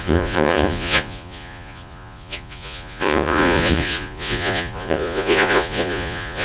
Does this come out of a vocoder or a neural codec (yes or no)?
yes